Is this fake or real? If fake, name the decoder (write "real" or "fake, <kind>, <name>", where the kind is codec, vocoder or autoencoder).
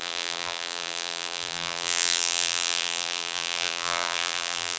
fake, vocoder, BigVGAN v2